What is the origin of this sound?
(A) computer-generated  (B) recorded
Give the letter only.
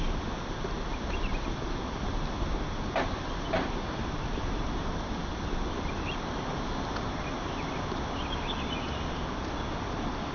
B